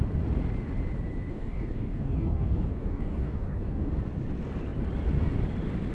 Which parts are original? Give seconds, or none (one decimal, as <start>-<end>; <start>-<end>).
0.0-1.3; 3.9-5.9